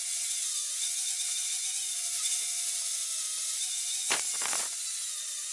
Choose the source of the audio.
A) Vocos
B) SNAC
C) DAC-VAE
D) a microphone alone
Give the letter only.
A